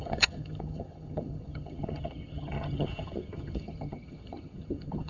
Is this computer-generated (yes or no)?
yes